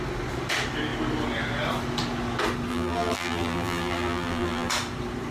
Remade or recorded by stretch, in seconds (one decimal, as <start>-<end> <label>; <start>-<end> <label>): 0.0-2.7 recorded; 2.7-4.7 remade; 4.7-5.3 recorded

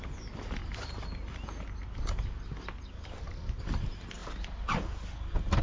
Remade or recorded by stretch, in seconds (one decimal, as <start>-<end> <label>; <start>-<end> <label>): 0.0-5.6 recorded